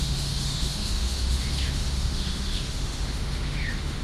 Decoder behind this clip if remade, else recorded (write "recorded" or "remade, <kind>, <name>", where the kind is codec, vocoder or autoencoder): remade, autoencoder, DAC-VAE